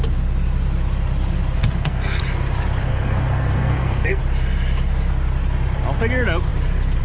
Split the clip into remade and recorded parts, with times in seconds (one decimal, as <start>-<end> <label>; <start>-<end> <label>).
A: 0.0-1.6 recorded; 1.6-2.2 remade; 2.2-2.9 recorded; 2.9-4.2 remade; 4.2-7.0 recorded